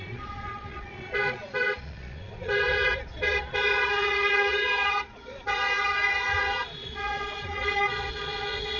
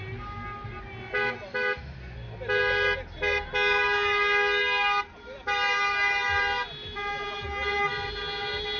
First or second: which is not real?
first